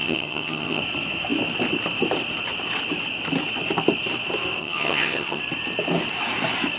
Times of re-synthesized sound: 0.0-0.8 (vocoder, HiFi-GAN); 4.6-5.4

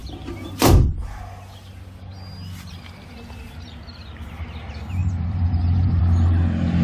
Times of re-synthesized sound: 5.0-6.0 (vocoder, BigVGAN v2)

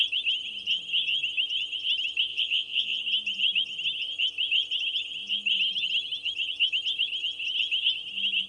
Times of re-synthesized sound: 2.3-3.0 (vocoder, Vocos)